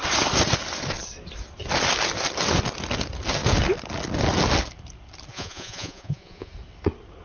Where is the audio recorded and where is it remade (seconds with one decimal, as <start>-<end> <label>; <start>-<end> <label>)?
0.0-5.3 recorded; 5.3-6.5 remade; 6.5-7.2 recorded